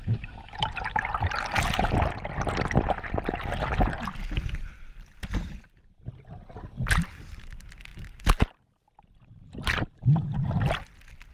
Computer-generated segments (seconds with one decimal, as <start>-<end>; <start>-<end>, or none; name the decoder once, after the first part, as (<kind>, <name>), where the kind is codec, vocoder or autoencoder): 7.9-8.5 (vocoder, BigVGAN v2)